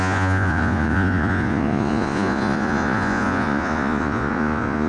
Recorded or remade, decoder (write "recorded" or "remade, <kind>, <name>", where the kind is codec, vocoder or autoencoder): remade, vocoder, Vocos